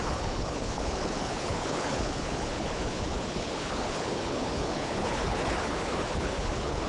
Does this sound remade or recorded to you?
remade